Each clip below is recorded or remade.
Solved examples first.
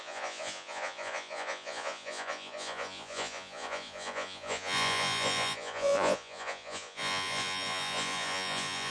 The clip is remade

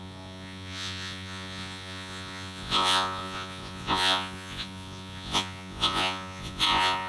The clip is remade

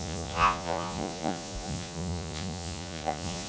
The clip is remade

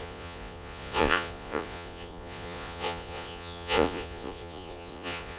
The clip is remade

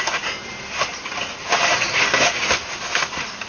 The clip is recorded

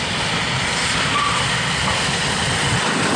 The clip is recorded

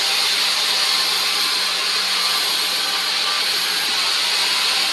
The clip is recorded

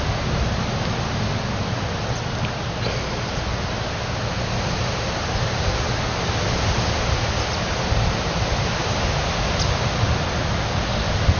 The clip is recorded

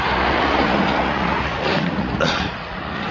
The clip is remade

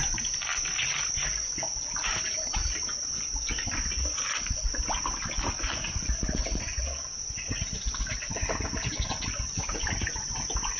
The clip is recorded